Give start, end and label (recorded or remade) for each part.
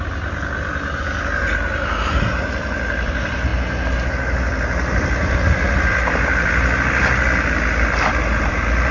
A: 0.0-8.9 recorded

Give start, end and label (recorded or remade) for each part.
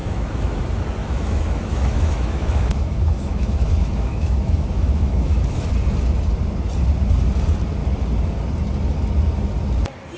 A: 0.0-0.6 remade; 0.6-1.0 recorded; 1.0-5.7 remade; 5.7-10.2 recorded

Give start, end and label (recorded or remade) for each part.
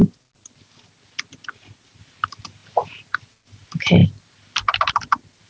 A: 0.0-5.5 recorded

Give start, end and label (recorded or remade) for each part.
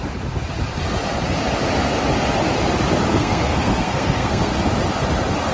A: 0.0-3.1 recorded; 3.1-4.5 remade; 4.5-5.5 recorded